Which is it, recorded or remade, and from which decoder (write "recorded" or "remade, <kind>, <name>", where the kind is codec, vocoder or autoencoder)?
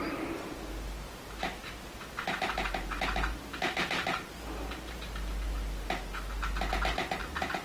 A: recorded